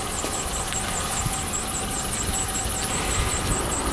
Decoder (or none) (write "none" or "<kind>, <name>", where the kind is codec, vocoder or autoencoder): none